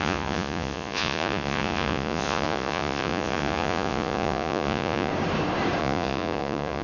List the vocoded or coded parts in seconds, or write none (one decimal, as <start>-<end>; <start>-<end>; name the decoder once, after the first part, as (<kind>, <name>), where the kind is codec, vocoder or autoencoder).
0.0-5.1 (vocoder, Vocos); 5.8-6.8